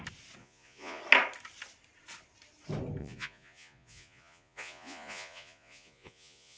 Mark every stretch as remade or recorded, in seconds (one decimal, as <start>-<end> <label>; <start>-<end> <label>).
0.0-0.4 recorded; 0.4-1.0 remade; 1.0-3.0 recorded; 3.0-6.6 remade